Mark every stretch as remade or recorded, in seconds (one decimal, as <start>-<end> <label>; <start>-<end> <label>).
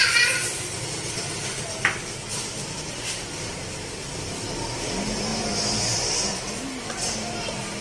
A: 0.0-2.3 recorded; 2.3-4.5 remade; 4.5-5.3 recorded; 5.3-6.5 remade; 6.5-7.8 recorded